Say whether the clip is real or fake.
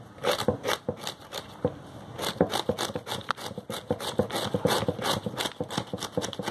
real